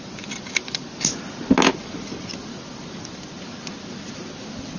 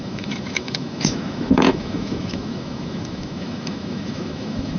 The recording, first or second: first